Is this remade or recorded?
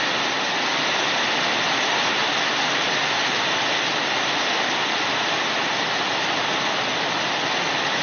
recorded